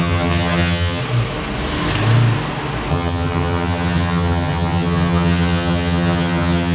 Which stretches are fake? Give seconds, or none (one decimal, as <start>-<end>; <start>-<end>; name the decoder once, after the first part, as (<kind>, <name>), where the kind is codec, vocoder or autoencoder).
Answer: 0.0-1.0 (vocoder, HiFi-GAN); 2.9-6.7